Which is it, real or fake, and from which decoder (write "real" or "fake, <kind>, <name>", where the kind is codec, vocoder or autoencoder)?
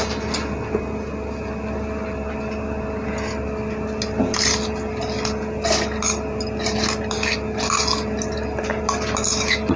real